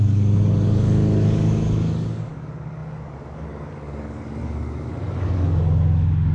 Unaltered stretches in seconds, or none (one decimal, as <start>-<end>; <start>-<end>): none